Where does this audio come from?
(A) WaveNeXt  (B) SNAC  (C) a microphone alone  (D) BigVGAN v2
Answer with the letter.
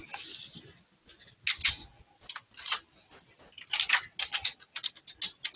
C